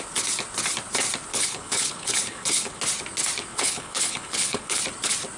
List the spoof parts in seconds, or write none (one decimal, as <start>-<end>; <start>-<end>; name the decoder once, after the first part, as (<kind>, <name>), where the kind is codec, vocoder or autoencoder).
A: 1.3-2.8 (codec, HILCodec); 3.5-4.8